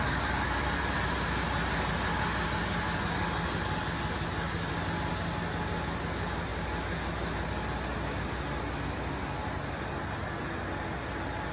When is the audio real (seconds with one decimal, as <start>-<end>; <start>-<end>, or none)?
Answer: 0.0-11.5